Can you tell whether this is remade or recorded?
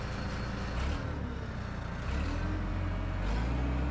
recorded